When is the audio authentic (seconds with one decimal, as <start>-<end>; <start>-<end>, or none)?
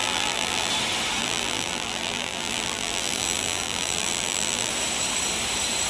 0.7-1.2; 4.7-5.9